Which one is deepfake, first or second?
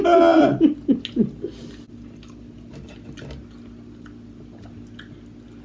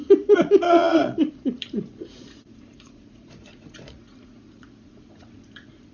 second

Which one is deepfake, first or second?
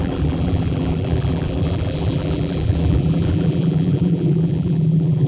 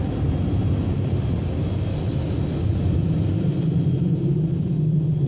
first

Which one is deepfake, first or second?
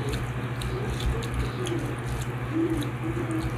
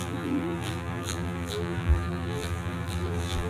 second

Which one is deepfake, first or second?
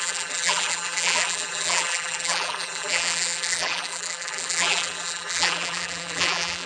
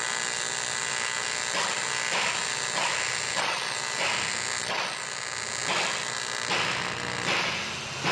first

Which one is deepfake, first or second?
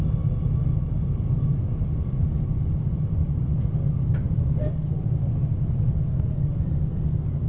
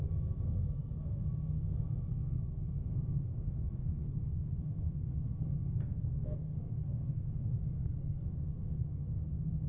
second